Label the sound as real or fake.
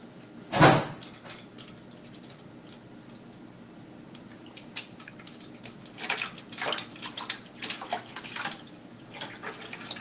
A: real